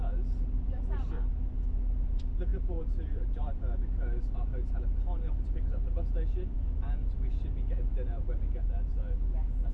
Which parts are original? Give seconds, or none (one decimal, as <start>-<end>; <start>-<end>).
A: 0.0-2.5; 3.6-9.7